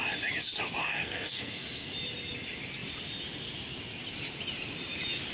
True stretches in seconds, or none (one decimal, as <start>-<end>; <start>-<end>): 0.0-0.8; 1.9-5.3